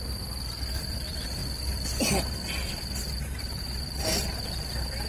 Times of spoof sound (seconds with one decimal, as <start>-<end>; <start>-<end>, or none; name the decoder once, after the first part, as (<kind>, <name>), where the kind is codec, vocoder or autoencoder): none